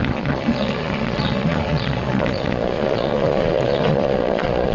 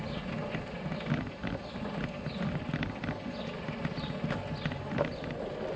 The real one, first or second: second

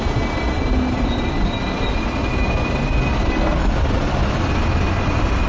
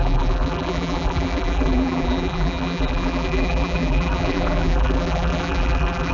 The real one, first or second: first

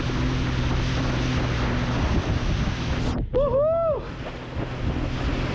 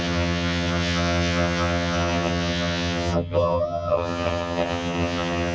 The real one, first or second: first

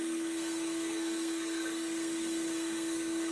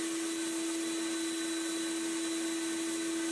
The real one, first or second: second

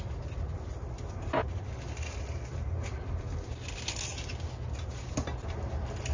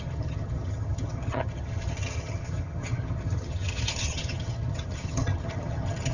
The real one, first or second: first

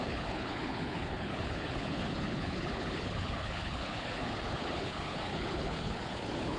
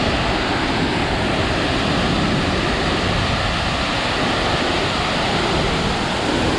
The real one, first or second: second